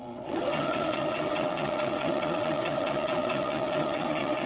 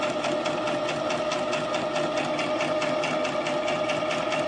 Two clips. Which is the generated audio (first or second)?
first